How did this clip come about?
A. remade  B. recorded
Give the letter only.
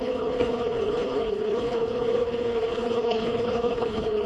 A